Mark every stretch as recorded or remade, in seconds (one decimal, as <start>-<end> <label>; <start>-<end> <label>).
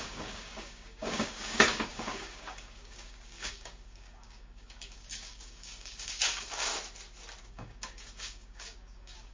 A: 0.0-6.7 remade; 6.7-7.4 recorded; 7.4-9.3 remade